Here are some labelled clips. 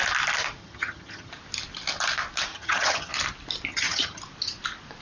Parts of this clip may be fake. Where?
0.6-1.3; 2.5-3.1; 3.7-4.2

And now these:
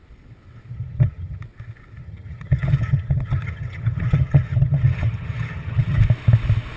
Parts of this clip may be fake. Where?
0.7-1.4; 2.0-6.0

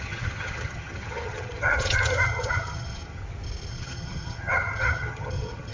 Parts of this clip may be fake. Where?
0.0-3.2; 3.7-5.7

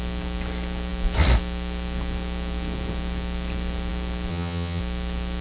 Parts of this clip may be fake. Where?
4.3-4.8

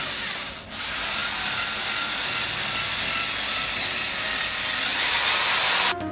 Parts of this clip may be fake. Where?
none